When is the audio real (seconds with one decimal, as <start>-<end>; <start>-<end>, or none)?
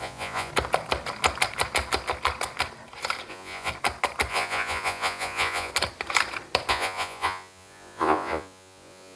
0.5-3.3; 3.7-4.3; 5.7-6.7